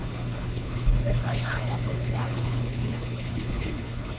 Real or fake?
fake